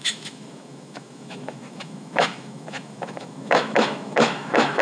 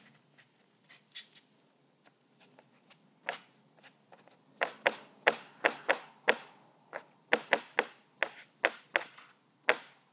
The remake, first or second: first